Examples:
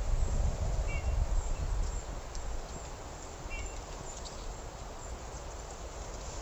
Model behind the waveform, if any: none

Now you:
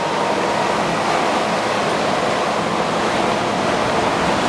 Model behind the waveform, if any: none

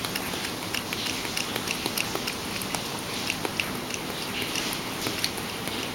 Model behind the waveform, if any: none